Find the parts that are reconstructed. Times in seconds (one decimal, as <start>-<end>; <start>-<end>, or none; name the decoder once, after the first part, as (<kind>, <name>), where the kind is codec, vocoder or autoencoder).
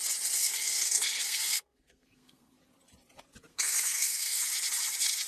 0.4-2.5 (codec, SNAC); 3.5-4.4